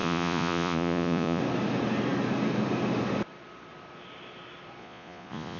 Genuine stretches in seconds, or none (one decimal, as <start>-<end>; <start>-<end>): 1.4-4.8